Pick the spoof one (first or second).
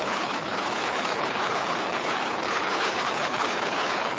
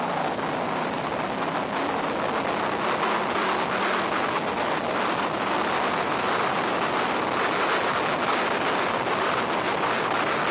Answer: first